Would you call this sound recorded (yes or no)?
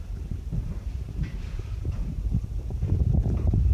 no